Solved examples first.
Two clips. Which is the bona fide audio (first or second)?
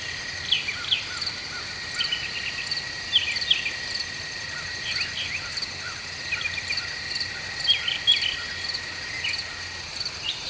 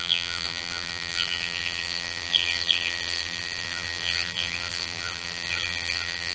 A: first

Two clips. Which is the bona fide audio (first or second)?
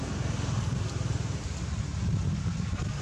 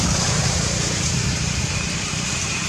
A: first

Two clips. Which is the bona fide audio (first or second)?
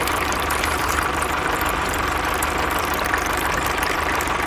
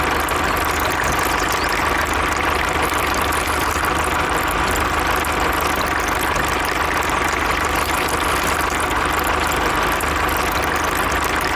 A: second